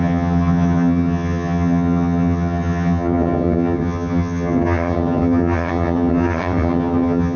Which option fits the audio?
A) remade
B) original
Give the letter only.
A